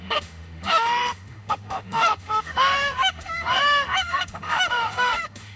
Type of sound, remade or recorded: remade